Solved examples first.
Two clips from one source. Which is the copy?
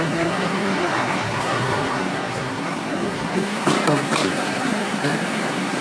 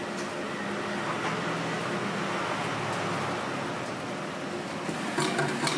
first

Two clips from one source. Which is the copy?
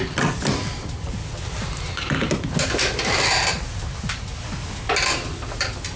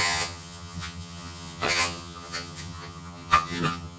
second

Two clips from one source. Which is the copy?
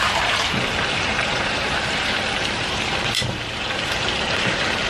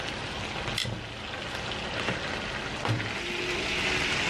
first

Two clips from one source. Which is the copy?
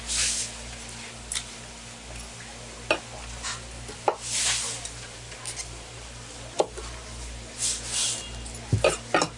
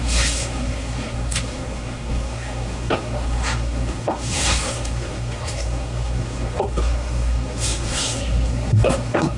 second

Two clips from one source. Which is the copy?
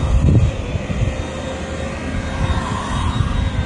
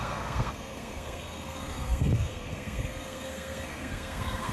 second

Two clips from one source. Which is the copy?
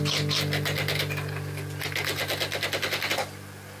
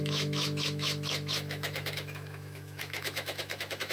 second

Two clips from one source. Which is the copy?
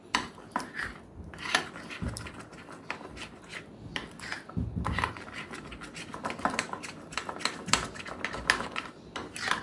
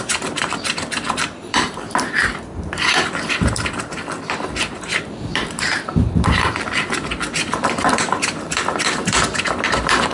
second